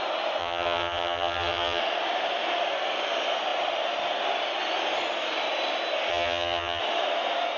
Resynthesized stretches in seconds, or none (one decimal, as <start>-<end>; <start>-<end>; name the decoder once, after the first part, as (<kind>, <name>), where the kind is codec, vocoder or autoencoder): 0.4-1.8 (vocoder, HiFi-GAN); 6.1-6.8